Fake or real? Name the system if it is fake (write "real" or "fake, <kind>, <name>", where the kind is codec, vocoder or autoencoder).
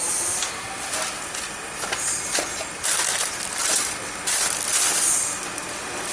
real